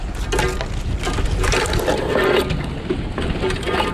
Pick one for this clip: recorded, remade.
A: recorded